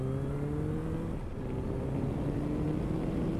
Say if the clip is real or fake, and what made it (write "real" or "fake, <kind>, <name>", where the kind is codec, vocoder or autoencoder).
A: real